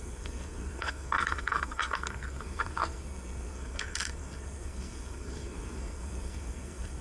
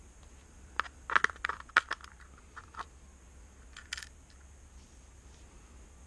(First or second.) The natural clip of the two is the second